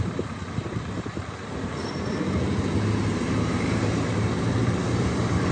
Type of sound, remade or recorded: remade